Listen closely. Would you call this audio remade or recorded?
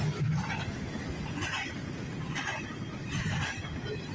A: recorded